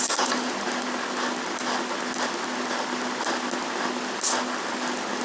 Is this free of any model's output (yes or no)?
yes